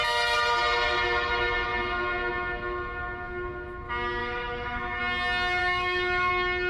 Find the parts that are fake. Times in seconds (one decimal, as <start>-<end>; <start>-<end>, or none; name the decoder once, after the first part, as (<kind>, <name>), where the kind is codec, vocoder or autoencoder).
4.2-5.0 (autoencoder, DAC-VAE); 5.6-6.3